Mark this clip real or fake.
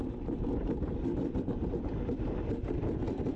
real